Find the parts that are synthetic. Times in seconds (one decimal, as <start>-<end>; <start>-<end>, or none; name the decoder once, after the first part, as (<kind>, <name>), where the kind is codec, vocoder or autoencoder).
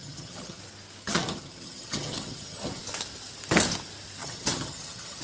0.0-0.6 (vocoder, HiFi-GAN); 1.0-2.8; 4.2-5.2